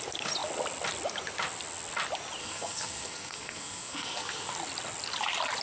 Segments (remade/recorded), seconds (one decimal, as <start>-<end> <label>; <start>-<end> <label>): 0.0-2.4 recorded; 2.4-4.5 remade; 4.5-5.6 recorded